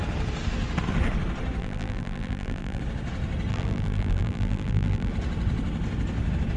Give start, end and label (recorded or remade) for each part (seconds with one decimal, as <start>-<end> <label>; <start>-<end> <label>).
0.0-1.6 recorded; 1.6-2.8 remade; 2.8-3.5 recorded; 3.5-5.1 remade; 5.1-6.6 recorded